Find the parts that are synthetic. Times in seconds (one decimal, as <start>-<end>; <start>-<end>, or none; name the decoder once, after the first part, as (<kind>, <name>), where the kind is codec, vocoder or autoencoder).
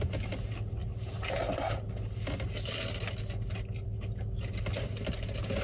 none